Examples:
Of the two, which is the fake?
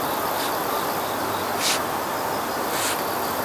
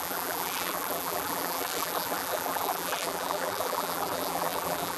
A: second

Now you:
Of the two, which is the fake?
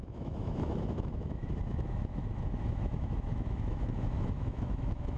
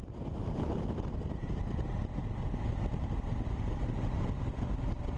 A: first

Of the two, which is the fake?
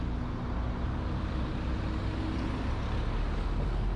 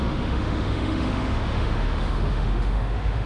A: second